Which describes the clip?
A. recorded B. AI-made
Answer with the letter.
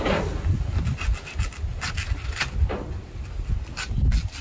A